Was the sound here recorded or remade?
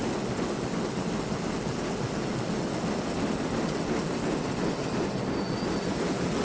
recorded